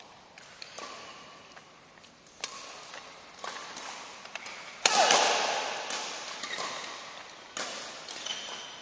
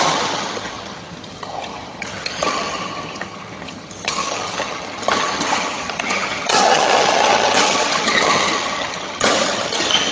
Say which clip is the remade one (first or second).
second